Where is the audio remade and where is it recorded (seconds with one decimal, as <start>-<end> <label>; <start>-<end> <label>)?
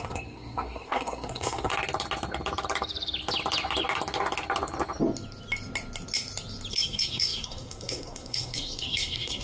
0.0-1.7 remade; 1.7-6.7 recorded; 6.7-9.4 remade